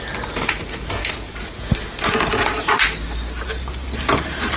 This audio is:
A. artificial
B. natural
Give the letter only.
B